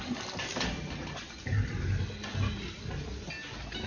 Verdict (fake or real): real